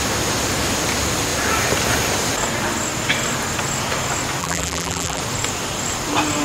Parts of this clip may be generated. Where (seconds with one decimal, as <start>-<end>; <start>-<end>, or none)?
4.4-5.2